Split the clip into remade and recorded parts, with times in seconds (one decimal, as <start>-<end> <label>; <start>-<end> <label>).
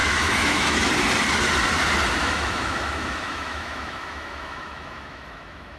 0.0-0.9 remade; 0.9-2.2 recorded; 2.2-5.8 remade